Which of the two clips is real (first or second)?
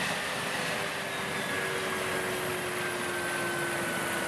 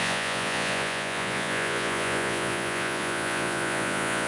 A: first